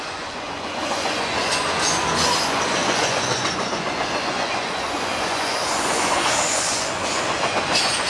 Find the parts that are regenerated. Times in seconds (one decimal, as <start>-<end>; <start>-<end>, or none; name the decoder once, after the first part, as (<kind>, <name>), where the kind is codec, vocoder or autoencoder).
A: 0.0-8.1 (vocoder, Vocos)